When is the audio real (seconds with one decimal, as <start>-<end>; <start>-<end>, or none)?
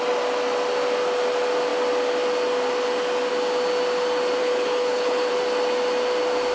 0.0-4.4; 5.3-6.5